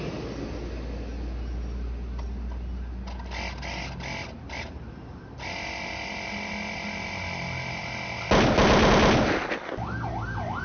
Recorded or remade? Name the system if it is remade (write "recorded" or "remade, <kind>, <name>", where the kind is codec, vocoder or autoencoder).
recorded